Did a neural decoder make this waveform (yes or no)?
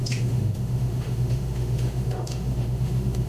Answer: yes